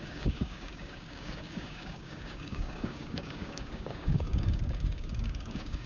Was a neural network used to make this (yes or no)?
yes